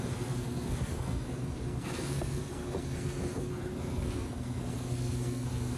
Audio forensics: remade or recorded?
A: remade